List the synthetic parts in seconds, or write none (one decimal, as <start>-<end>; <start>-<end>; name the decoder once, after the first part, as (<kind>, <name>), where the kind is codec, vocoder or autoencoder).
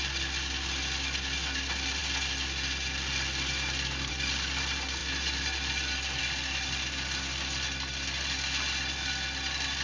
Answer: none